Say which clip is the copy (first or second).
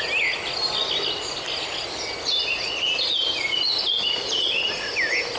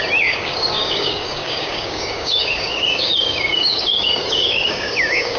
second